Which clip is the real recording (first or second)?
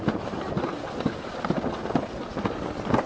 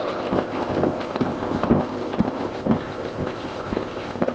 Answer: first